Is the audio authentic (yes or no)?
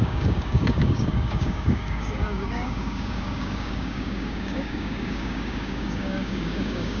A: no